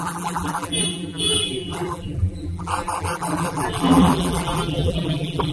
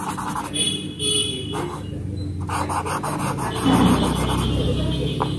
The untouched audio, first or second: second